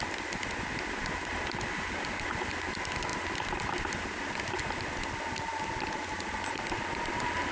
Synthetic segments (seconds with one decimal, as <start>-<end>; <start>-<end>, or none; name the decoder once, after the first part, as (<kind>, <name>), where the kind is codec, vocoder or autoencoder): none